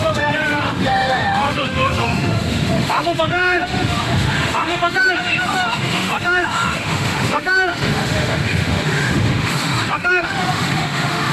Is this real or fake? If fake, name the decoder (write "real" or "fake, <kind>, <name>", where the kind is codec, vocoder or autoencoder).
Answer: fake, autoencoder, DAC-VAE